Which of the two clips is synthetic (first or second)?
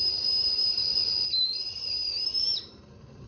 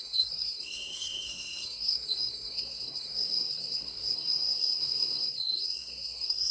second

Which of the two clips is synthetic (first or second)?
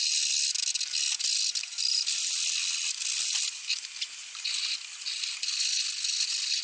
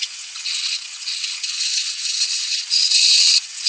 second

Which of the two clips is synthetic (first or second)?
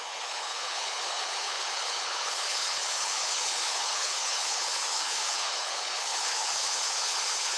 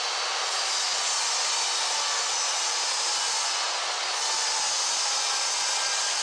first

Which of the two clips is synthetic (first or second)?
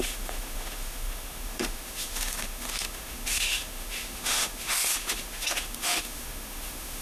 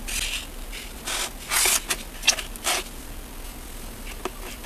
first